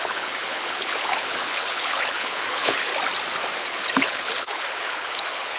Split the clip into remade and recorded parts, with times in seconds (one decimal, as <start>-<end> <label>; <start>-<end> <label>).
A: 0.0-2.9 remade; 2.9-3.6 recorded; 3.6-5.6 remade